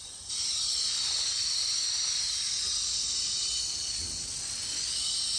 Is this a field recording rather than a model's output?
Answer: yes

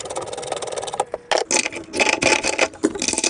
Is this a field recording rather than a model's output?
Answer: yes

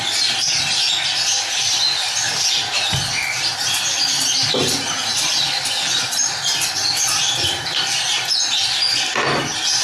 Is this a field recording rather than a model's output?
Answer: yes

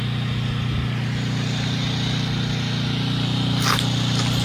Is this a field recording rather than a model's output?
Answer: yes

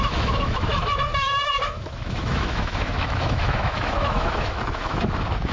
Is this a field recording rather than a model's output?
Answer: no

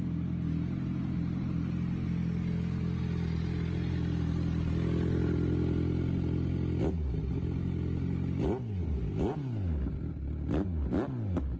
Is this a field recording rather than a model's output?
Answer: yes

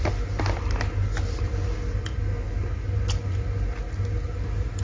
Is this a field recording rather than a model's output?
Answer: yes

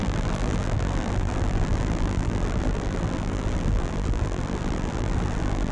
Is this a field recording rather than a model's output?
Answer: no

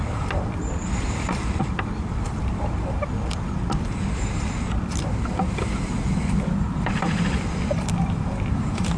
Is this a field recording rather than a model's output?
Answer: no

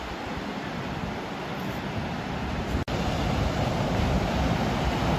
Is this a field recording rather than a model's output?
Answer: yes